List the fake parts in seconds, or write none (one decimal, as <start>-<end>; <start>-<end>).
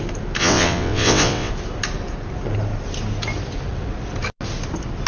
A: 0.4-1.5